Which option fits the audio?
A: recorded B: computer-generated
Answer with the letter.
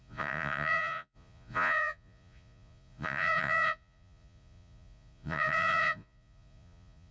B